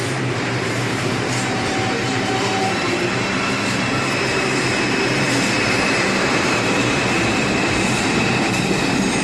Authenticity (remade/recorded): remade